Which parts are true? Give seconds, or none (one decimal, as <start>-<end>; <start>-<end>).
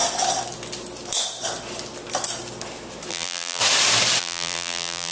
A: 0.0-3.1; 3.6-4.2